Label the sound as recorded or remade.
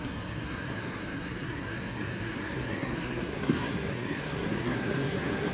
remade